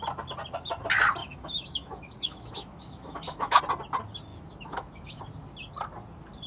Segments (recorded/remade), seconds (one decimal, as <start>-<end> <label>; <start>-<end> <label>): 0.0-1.2 recorded; 1.2-3.6 remade; 3.6-4.3 recorded; 4.3-5.2 remade; 5.2-6.5 recorded